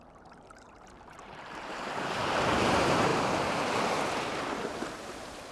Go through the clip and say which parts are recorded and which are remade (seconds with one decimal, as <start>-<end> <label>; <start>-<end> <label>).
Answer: 0.0-2.2 remade; 2.2-2.7 recorded; 2.7-3.1 remade; 3.1-4.7 recorded; 4.7-5.5 remade